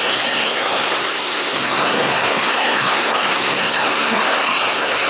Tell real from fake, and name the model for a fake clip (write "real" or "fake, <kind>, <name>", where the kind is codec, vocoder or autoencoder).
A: fake, codec, SNAC